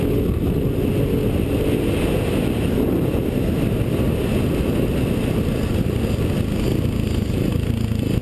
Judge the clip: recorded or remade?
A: recorded